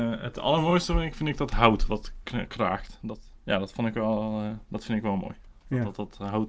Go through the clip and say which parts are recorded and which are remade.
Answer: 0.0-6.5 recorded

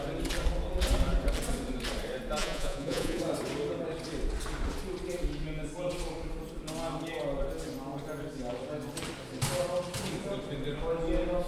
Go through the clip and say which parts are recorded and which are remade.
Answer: 0.0-2.4 recorded; 2.4-3.2 remade; 3.2-11.5 recorded